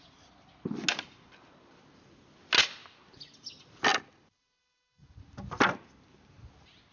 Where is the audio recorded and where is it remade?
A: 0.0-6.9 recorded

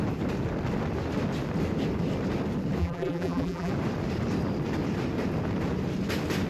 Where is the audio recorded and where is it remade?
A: 0.0-2.8 recorded; 2.8-3.7 remade; 3.7-6.5 recorded